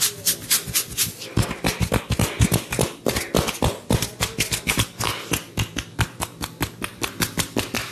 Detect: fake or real real